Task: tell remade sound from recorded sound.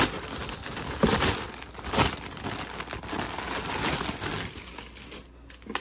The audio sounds recorded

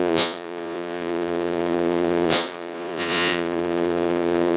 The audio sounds remade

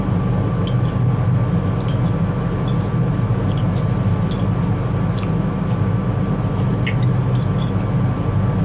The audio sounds recorded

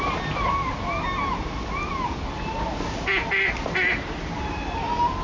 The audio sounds recorded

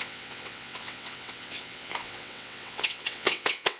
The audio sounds remade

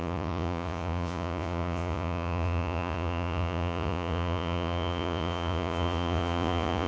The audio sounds remade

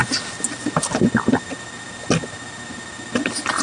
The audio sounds recorded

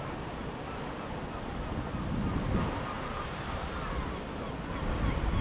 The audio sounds recorded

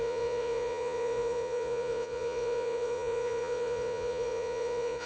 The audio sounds remade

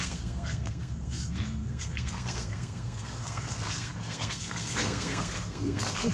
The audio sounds remade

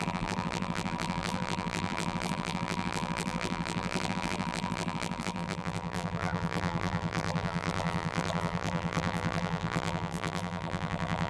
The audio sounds remade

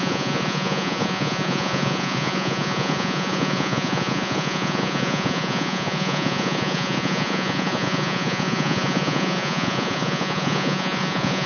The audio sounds remade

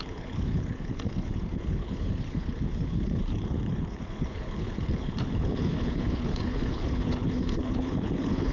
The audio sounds remade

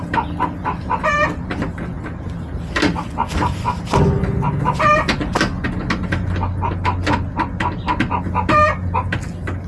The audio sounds recorded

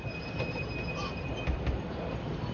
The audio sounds recorded